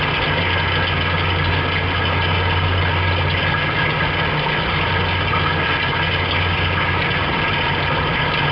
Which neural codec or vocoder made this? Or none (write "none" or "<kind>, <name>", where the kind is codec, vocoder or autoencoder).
none